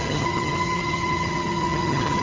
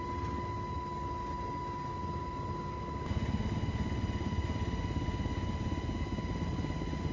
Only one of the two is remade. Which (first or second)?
first